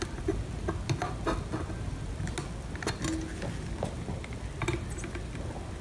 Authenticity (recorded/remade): recorded